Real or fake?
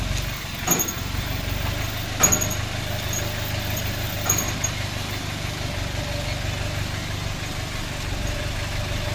real